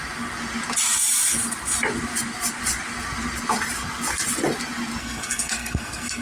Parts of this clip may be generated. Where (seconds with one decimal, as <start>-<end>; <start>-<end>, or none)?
5.0-6.2